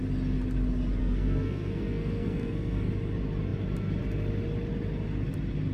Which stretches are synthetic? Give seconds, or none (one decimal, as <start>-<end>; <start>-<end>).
1.0-2.9